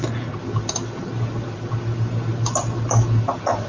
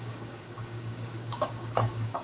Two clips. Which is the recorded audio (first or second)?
first